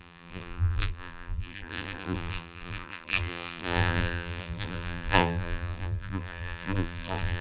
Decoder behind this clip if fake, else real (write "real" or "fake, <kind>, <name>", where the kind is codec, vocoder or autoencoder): fake, vocoder, BigVGAN v2